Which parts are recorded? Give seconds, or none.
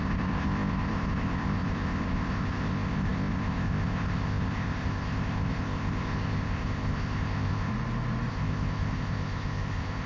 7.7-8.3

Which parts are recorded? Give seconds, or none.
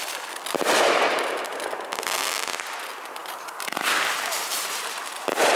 0.0-3.2; 4.8-5.6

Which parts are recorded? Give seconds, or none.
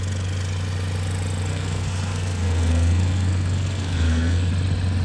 0.0-1.5; 4.5-5.0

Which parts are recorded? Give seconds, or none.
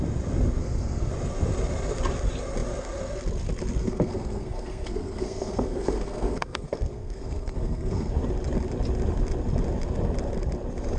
0.0-0.6; 1.1-3.8; 8.1-11.0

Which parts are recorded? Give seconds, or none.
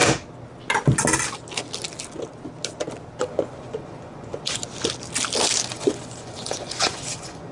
0.0-3.2; 4.6-5.7